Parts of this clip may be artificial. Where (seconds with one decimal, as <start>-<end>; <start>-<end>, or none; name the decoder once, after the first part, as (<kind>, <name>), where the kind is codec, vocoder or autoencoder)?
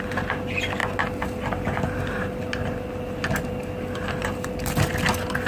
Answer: none